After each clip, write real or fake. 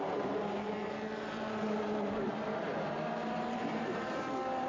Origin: fake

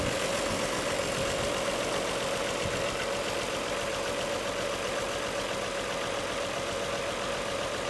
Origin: real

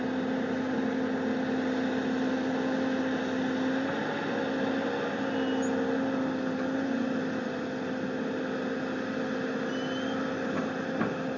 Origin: real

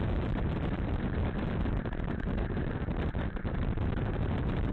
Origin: fake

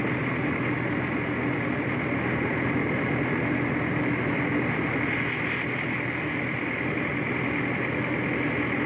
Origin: real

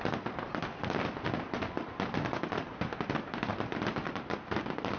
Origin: real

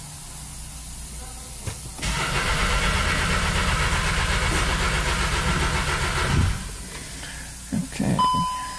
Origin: real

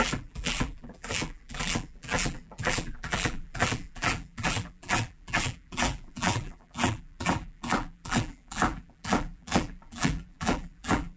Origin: fake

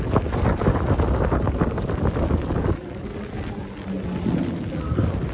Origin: real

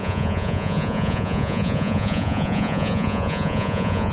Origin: fake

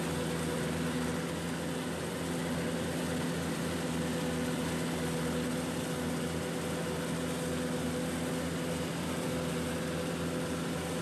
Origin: real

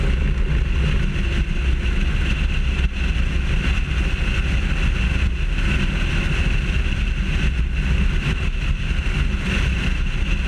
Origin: real